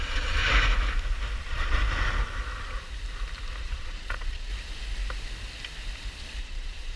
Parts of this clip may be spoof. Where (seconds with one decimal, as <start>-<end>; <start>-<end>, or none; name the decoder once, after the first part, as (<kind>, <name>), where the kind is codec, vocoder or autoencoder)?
0.0-0.4 (vocoder, Vocos); 1.4-1.8; 3.6-4.5; 6.4-7.0